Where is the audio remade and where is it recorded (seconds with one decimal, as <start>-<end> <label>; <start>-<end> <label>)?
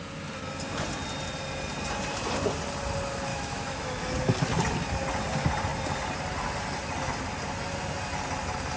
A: 0.0-3.3 recorded; 3.3-4.0 remade; 4.0-8.8 recorded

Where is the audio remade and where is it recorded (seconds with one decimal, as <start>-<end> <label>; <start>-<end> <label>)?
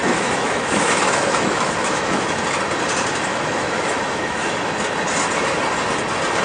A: 0.0-2.4 remade; 2.4-3.3 recorded; 3.3-4.7 remade; 4.7-6.4 recorded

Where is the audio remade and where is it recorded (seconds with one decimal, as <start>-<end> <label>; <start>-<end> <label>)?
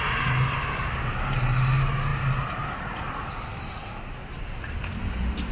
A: 0.0-5.5 recorded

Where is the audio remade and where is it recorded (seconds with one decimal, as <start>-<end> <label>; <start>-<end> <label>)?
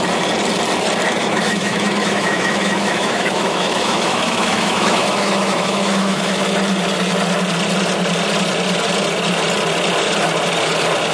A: 0.0-1.2 recorded; 1.2-6.4 remade; 6.4-11.1 recorded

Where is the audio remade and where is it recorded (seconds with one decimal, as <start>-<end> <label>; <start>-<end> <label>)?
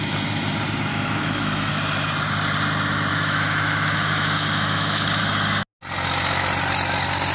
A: 0.0-0.9 recorded; 0.9-1.7 remade; 1.7-3.1 recorded; 3.1-5.2 remade; 5.2-7.3 recorded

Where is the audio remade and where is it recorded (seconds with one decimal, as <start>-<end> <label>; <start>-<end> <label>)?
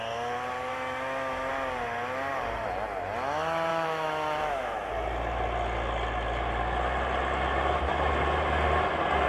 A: 0.0-0.7 recorded; 0.7-1.5 remade; 1.5-3.7 recorded; 3.7-4.9 remade; 4.9-9.3 recorded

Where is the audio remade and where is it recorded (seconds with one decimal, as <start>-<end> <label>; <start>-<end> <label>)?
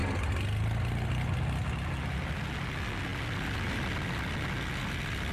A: 0.0-5.3 recorded